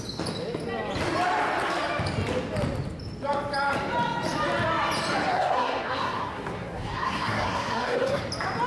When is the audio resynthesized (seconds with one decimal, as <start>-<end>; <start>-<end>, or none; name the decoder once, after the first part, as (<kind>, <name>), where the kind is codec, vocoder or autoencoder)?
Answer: 5.3-8.2 (codec, SNAC)